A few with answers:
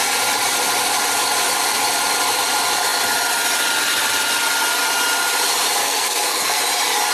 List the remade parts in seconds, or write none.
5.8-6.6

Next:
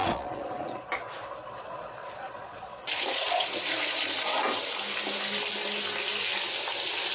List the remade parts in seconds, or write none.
0.0-0.9; 1.4-4.0

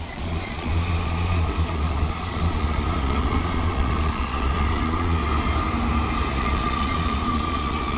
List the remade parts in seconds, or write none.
0.0-5.2; 6.3-8.0

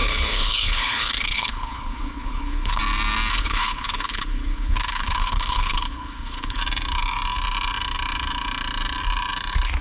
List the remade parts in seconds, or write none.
0.0-2.8; 3.3-6.6

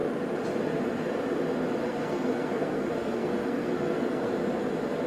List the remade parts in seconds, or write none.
1.8-4.3